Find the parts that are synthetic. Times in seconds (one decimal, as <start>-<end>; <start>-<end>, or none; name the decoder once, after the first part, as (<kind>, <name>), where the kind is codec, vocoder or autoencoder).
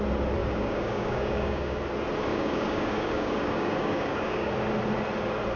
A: 0.4-1.8 (codec, DAC); 2.3-4.5